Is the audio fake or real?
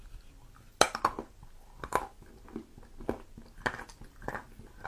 real